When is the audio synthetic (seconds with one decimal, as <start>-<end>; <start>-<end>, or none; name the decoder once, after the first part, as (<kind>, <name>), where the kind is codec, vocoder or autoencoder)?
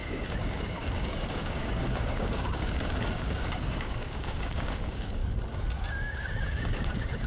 0.0-5.2 (codec, DAC); 5.9-7.3